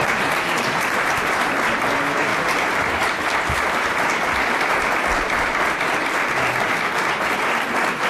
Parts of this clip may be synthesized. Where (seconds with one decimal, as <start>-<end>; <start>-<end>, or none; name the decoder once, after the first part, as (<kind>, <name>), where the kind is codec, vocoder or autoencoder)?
none